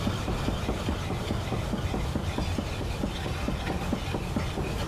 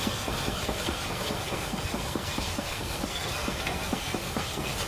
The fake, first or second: second